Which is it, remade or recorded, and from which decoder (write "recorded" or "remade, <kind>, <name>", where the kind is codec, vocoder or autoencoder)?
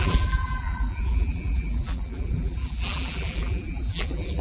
remade, vocoder, BigVGAN v2